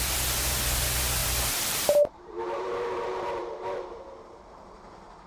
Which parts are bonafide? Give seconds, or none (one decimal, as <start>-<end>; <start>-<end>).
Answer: 0.0-1.2; 4.4-5.3